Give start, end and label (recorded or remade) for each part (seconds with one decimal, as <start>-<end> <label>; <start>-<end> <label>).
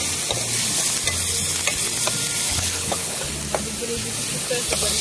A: 0.0-2.5 recorded; 2.5-3.3 remade; 3.3-5.0 recorded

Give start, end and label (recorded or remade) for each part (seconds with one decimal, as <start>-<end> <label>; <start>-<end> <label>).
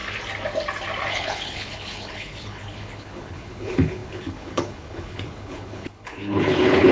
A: 0.0-1.1 recorded; 1.1-6.9 remade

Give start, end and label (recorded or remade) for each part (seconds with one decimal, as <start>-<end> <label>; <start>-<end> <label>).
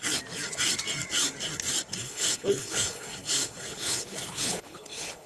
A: 0.0-1.9 recorded; 1.9-5.3 remade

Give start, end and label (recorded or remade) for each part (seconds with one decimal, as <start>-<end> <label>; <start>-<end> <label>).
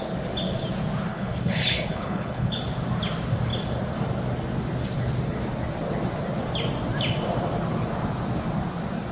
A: 0.0-1.1 recorded; 1.1-2.6 remade; 2.6-9.1 recorded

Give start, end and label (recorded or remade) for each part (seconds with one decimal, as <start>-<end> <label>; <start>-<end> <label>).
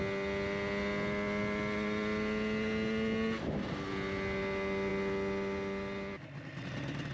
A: 0.0-7.1 recorded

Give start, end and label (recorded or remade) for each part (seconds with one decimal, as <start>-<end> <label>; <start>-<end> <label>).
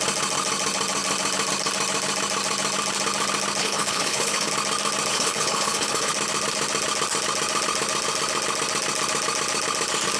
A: 0.0-3.6 recorded; 3.6-4.5 remade; 4.5-5.1 recorded; 5.1-6.1 remade; 6.1-10.2 recorded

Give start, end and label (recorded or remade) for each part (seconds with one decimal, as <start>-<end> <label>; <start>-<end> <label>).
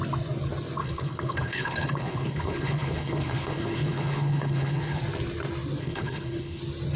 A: 0.0-0.8 recorded; 0.8-5.0 remade; 5.0-5.8 recorded; 5.8-6.6 remade; 6.6-7.0 recorded